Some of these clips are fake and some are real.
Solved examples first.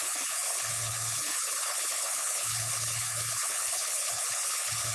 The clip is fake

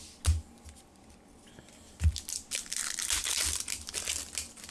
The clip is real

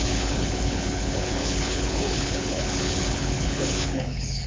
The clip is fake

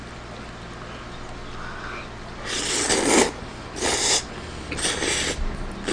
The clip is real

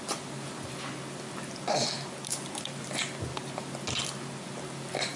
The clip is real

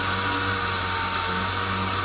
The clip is real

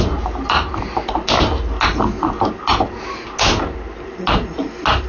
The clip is real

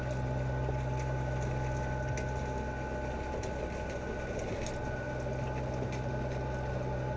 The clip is real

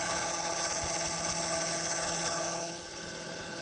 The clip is fake